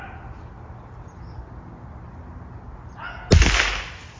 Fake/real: real